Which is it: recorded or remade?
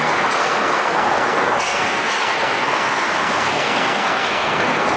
remade